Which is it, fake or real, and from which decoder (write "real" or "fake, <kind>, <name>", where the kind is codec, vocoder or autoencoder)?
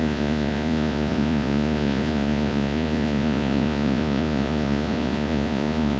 fake, vocoder, Vocos